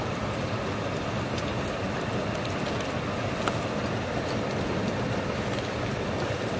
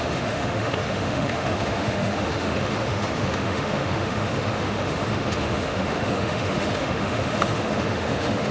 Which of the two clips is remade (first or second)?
second